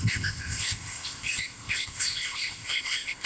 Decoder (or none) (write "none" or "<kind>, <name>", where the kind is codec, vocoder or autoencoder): codec, ZipCodec